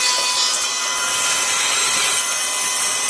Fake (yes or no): no